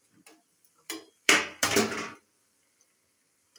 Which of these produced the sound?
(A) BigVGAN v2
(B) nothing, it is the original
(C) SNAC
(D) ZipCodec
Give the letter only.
A